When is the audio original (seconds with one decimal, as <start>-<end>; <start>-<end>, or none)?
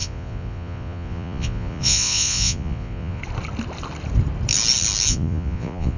3.2-5.1